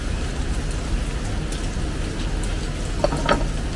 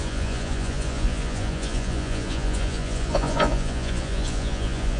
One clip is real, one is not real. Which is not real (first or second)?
second